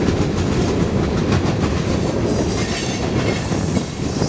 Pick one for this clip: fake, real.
real